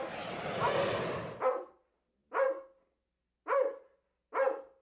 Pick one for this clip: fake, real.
real